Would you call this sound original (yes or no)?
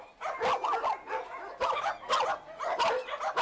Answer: yes